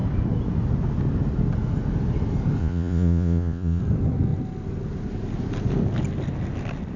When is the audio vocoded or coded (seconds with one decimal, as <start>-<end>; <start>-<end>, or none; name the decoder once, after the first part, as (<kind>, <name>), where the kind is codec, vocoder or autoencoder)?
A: 2.6-3.8 (vocoder, Vocos)